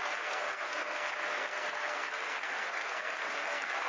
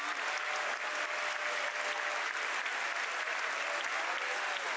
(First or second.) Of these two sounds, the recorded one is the second